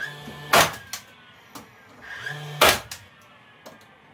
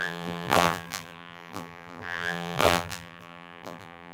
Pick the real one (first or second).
first